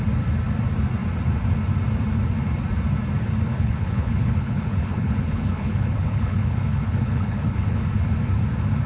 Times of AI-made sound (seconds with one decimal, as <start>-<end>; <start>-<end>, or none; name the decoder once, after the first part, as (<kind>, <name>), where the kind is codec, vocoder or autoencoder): 3.5-7.9 (codec, HILCodec)